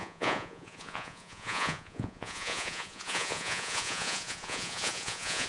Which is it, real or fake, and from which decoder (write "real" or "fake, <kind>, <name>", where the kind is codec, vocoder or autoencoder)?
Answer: fake, vocoder, Vocos